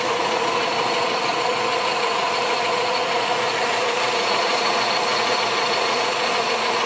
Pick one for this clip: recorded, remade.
remade